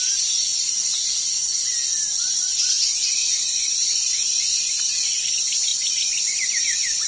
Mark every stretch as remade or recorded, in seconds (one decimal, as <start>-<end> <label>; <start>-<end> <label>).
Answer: 0.0-5.7 recorded; 5.7-7.1 remade